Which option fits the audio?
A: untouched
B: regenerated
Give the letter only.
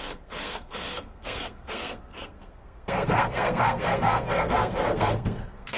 B